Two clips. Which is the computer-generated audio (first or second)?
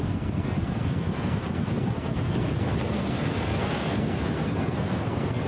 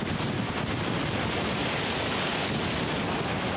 first